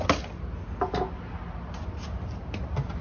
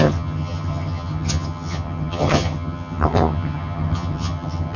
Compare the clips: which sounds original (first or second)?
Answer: first